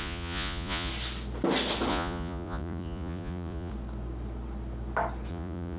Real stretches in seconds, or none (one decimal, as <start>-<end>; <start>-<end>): 0.9-1.9; 3.7-5.3